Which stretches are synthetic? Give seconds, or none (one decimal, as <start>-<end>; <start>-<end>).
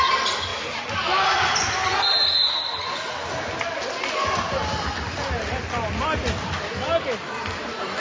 none